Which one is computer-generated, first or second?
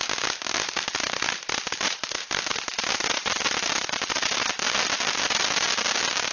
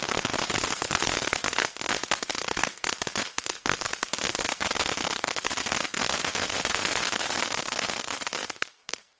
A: second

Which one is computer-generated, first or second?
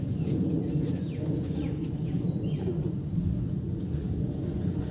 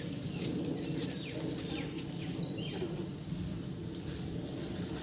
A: first